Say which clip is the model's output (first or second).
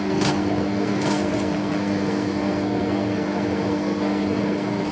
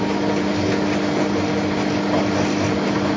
first